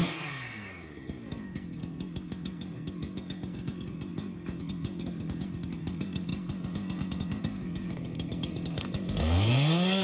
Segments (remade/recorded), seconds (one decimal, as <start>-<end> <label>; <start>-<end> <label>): 0.0-10.0 remade